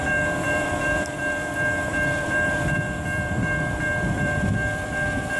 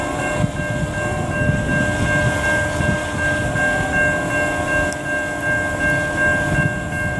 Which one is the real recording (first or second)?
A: second